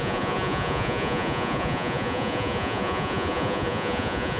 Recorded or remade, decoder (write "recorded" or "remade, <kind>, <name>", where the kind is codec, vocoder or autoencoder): remade, vocoder, Vocos